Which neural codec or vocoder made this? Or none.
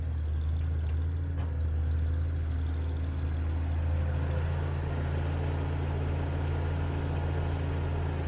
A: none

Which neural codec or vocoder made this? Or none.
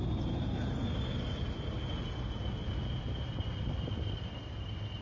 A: none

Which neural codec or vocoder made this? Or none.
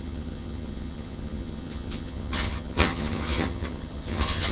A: vocoder, HiFi-GAN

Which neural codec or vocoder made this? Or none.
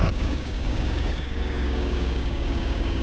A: codec, DAC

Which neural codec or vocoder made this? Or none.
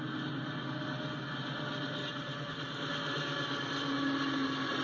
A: none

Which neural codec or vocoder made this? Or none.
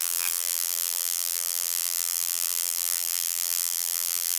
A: vocoder, BigVGAN v2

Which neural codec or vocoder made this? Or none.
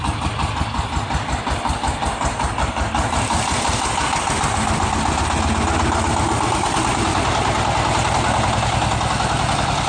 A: none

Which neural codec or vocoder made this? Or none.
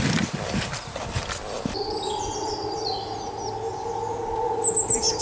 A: none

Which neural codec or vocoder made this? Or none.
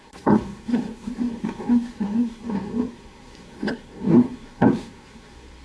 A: codec, SNAC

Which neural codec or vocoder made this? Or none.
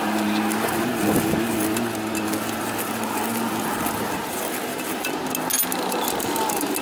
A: none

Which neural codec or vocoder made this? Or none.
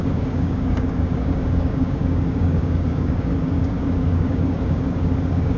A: codec, DAC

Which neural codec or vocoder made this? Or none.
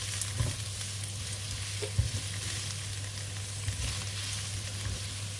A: none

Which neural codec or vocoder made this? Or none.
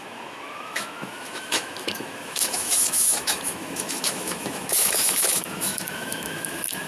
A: autoencoder, DAC-VAE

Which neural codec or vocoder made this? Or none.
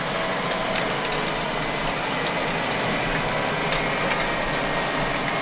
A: none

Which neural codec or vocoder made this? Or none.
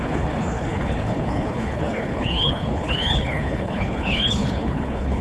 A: codec, HILCodec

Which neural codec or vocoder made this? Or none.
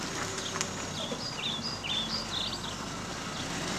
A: none